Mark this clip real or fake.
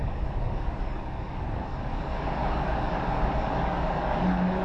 fake